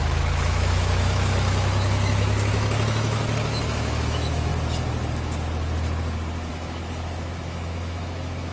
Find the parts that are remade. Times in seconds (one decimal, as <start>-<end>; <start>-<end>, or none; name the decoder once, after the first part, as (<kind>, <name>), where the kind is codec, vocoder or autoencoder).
0.0-4.5 (autoencoder, DAC-VAE); 6.5-8.5